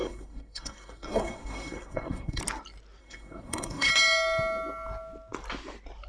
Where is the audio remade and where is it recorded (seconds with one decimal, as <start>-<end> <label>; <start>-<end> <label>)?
0.0-2.4 remade; 2.4-3.0 recorded; 3.0-3.9 remade; 3.9-6.1 recorded